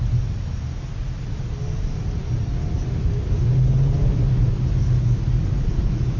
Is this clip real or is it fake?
real